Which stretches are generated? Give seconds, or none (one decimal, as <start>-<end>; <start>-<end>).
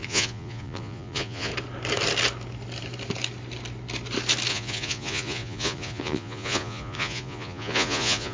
0.0-1.5; 4.5-8.3